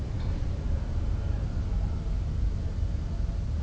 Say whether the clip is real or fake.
real